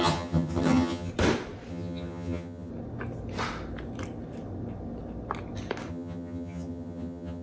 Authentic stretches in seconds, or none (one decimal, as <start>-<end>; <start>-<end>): 1.1-1.7; 2.7-5.9